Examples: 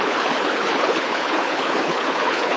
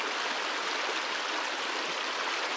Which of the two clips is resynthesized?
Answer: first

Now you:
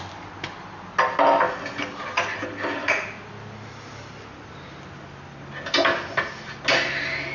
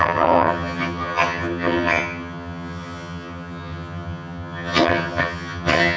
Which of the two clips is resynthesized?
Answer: second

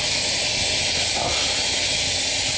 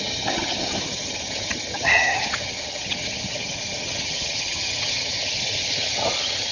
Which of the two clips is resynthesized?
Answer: second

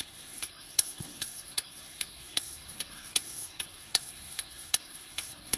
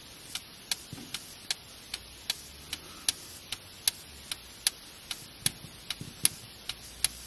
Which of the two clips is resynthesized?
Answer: first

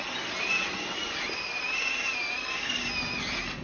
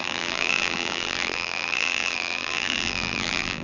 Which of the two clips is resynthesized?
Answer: second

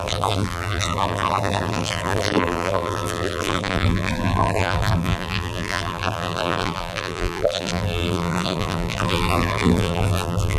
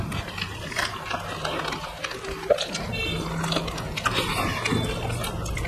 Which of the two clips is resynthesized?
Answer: first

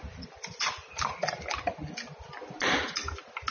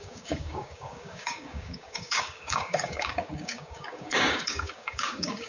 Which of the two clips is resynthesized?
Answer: second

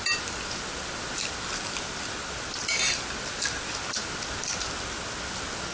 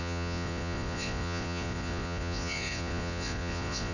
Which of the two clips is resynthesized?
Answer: second